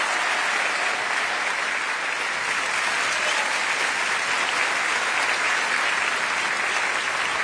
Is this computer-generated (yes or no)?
no